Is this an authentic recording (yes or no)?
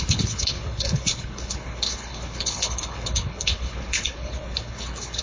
no